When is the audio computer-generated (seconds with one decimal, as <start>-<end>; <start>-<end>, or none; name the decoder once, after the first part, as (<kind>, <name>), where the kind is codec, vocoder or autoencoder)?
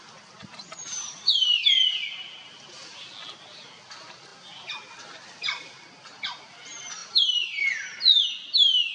0.6-3.0 (vocoder, BigVGAN v2); 7.0-7.9